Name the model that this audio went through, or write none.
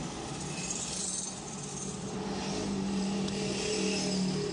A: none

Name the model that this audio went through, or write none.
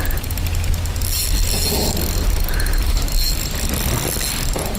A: none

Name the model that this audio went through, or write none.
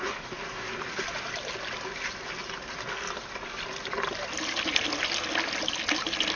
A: none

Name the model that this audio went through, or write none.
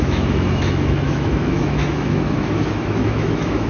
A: autoencoder, DAC-VAE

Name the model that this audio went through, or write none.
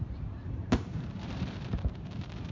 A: vocoder, BigVGAN v2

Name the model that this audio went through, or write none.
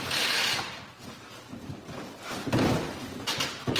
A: vocoder, BigVGAN v2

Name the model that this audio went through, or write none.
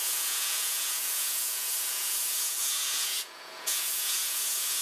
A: vocoder, Vocos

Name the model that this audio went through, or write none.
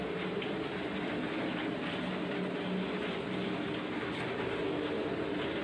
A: none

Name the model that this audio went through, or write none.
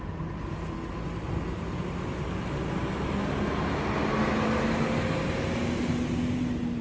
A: none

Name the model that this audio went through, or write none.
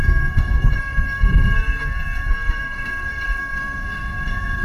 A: codec, SNAC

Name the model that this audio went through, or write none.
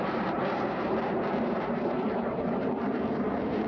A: vocoder, BigVGAN v2